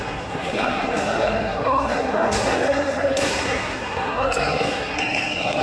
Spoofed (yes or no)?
yes